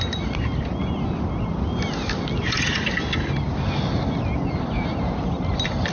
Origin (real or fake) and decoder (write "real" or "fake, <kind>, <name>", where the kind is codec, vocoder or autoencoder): real